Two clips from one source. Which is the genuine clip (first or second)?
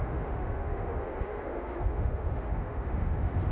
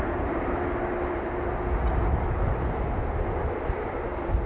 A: second